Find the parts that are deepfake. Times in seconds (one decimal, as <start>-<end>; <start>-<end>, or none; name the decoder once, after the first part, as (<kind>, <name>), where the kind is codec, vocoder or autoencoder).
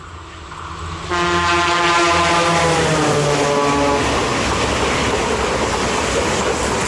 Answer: none